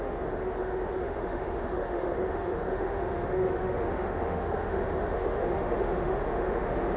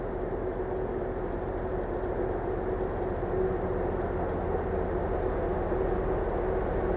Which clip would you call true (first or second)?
second